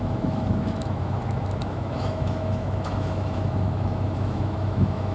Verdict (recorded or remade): remade